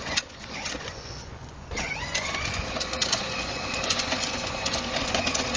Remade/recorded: remade